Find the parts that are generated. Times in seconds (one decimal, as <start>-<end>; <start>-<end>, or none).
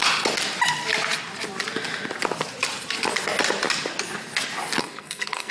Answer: 4.8-5.5